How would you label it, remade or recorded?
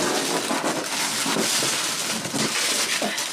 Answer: recorded